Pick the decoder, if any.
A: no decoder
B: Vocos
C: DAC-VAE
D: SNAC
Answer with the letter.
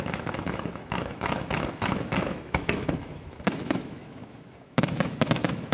C